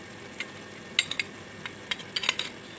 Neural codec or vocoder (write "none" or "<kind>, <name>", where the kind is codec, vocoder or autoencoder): none